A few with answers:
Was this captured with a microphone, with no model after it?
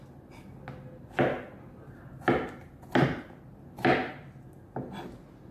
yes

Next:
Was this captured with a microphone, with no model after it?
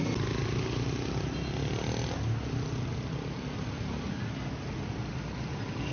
yes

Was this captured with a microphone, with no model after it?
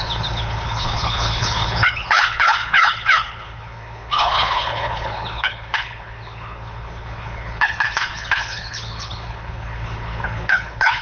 no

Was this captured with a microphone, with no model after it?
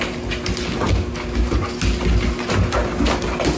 yes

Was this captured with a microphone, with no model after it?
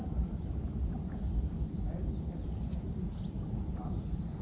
yes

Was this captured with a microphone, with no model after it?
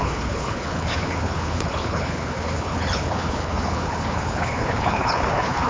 no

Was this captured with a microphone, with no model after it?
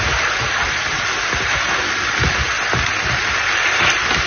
yes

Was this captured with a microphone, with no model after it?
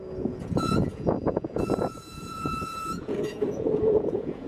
no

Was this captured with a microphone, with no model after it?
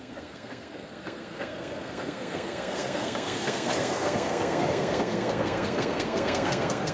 no